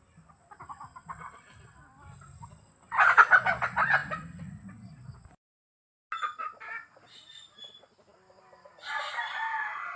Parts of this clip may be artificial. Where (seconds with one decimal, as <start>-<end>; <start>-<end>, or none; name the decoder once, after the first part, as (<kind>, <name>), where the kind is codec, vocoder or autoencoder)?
none